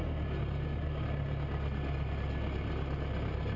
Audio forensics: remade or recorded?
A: recorded